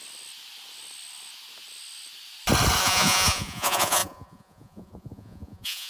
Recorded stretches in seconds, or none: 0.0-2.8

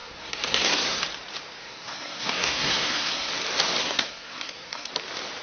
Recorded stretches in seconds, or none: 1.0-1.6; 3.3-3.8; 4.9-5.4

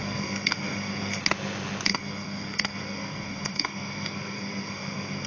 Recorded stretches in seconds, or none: 1.2-1.9